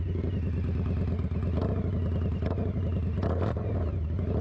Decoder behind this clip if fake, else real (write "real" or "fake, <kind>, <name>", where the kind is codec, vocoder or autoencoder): real